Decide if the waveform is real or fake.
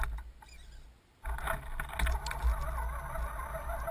real